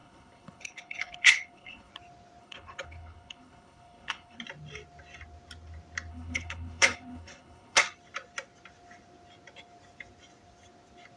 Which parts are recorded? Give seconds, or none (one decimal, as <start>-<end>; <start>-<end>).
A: 1.9-2.4; 4.4-6.1; 7.8-11.2